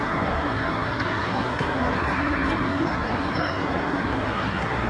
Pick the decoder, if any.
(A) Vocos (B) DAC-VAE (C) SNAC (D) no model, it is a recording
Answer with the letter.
C